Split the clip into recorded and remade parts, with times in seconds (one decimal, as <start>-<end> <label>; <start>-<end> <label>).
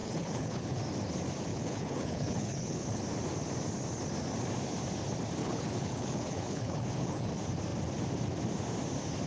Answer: 0.0-0.8 remade; 0.8-1.5 recorded; 1.5-3.0 remade; 3.0-5.4 recorded; 5.4-7.3 remade; 7.3-9.3 recorded